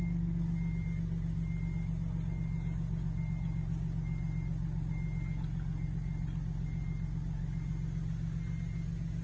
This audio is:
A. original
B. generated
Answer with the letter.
A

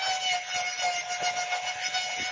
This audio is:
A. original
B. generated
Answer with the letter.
A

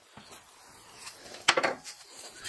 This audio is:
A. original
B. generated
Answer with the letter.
B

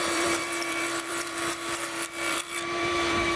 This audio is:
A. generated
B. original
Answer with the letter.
A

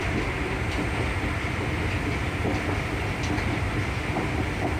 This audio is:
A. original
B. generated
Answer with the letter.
A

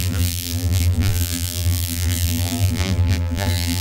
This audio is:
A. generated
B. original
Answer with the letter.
A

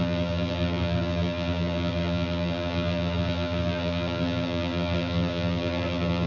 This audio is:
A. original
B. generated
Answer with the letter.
B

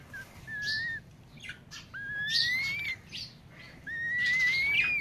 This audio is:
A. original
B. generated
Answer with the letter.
A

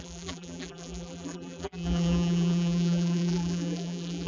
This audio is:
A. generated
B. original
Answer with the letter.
A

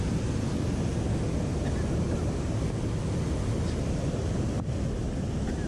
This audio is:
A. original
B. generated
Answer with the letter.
A